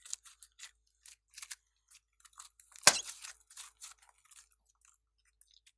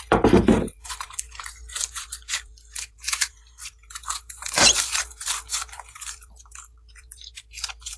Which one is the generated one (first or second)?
second